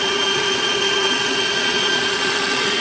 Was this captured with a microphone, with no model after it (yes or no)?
no